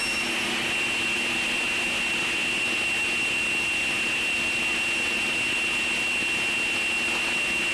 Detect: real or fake real